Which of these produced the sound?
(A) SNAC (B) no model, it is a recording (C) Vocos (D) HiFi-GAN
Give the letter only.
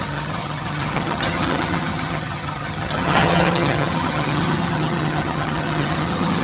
D